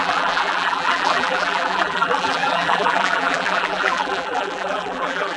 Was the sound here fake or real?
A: fake